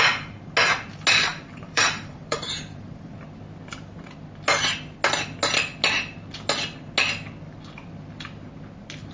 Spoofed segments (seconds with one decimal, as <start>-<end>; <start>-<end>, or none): 1.3-3.2

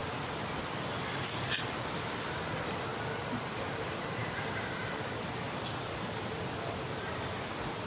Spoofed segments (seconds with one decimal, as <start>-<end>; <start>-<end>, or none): 1.0-2.9; 3.4-4.2; 4.8-7.9

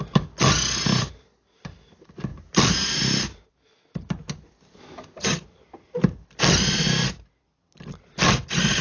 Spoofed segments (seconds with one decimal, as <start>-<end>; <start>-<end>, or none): 2.3-3.5

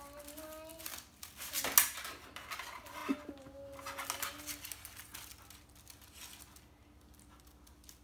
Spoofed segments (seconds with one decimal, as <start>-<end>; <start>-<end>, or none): none

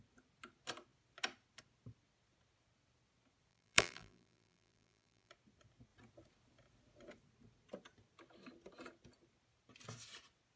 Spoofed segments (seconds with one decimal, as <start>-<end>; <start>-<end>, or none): 3.5-5.3

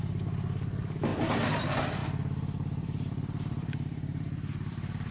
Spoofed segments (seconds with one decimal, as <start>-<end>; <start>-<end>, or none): 1.1-1.6; 2.0-5.1